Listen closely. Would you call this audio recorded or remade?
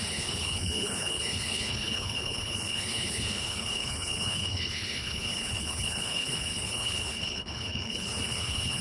remade